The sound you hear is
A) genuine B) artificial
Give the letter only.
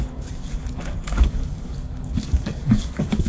B